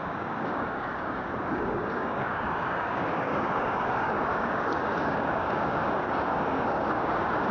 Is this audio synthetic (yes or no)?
yes